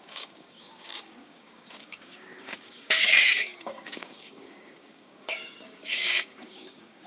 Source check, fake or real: fake